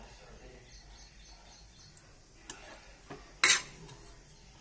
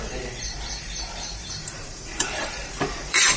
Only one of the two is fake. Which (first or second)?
second